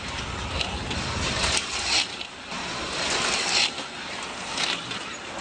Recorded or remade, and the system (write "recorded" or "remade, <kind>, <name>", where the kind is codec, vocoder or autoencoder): recorded